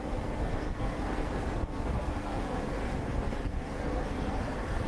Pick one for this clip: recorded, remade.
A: remade